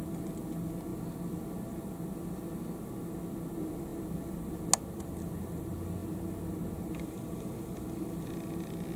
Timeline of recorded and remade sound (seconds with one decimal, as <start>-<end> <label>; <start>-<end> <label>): 0.0-9.0 recorded

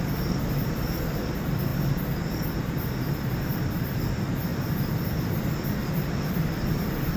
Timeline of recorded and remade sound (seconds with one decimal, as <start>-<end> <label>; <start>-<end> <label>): 0.0-1.7 remade; 1.7-3.4 recorded; 3.4-7.2 remade

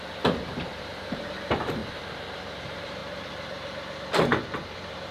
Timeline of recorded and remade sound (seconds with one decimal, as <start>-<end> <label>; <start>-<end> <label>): 0.0-1.8 remade; 1.8-2.6 recorded; 2.6-3.0 remade; 3.0-5.1 recorded